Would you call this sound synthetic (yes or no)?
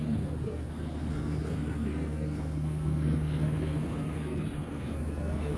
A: yes